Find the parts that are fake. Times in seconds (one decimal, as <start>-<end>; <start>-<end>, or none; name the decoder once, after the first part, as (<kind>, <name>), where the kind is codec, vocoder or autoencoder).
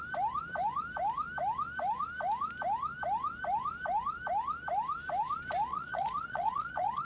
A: 5.7-7.0 (vocoder, Vocos)